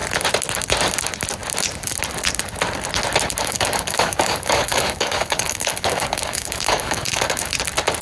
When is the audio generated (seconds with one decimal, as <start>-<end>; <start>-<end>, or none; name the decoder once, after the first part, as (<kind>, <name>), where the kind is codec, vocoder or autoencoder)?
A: 3.4-7.5 (codec, DAC)